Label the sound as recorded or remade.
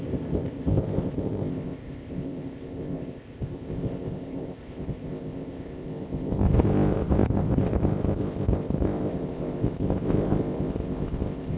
remade